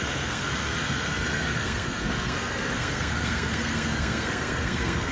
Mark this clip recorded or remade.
remade